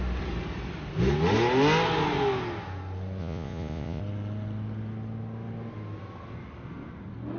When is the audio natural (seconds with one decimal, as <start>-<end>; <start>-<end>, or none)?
0.0-3.2; 4.0-7.4

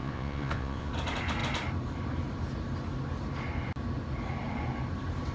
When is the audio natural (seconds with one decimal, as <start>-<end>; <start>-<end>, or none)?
0.9-5.3

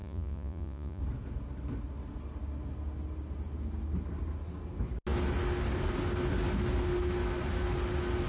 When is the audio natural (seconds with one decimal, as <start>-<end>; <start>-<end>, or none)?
1.0-8.3

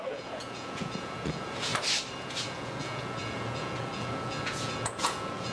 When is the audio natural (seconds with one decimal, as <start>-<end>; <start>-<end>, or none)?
1.7-2.2

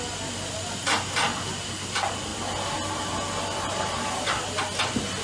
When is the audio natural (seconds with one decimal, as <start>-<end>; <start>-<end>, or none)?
0.0-5.2